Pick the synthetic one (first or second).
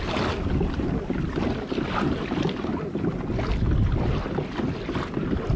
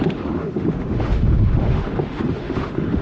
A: second